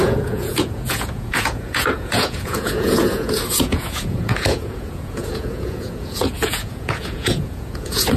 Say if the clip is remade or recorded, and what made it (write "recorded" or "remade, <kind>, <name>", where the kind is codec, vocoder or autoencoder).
remade, vocoder, Vocos